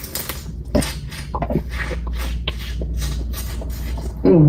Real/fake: real